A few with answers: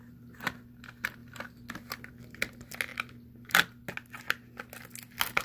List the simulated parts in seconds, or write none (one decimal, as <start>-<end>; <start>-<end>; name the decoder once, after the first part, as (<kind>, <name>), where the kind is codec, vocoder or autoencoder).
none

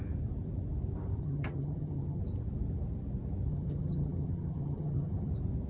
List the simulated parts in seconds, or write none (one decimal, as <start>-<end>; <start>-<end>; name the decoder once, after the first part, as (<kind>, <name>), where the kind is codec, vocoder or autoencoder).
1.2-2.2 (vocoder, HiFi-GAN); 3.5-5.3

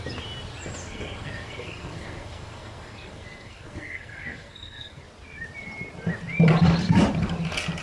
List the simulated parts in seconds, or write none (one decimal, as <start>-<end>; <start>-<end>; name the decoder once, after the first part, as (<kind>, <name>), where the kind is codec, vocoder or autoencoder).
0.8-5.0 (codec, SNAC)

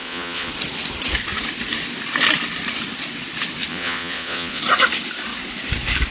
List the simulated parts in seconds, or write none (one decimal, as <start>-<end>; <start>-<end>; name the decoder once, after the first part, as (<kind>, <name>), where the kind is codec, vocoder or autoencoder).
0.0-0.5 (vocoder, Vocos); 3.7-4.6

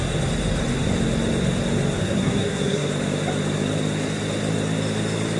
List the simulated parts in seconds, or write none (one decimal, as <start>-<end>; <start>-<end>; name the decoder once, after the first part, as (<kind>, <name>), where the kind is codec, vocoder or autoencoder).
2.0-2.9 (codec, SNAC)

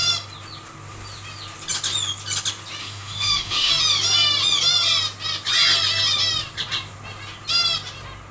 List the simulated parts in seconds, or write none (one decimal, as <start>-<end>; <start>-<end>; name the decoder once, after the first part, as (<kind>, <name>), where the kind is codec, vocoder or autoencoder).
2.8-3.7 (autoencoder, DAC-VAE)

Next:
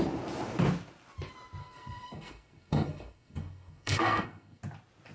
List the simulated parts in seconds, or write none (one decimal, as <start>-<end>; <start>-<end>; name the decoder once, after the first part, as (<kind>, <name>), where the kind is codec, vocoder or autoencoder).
1.6-4.6 (codec, SNAC)

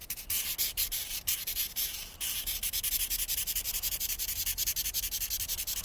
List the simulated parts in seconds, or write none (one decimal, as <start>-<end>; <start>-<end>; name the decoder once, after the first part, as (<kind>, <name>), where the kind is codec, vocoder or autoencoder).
0.0-4.5 (vocoder, BigVGAN v2)